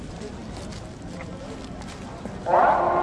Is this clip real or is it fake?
real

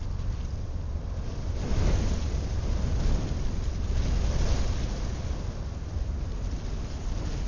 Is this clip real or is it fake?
real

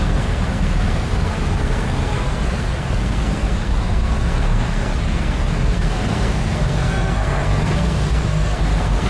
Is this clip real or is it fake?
fake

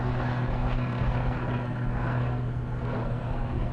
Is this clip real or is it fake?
fake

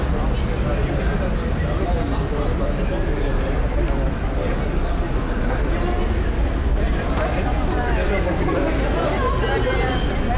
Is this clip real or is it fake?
real